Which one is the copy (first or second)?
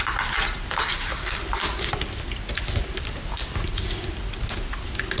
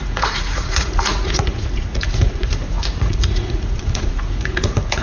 second